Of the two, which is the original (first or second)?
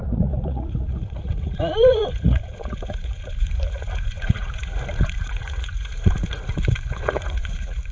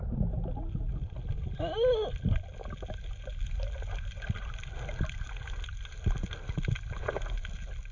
second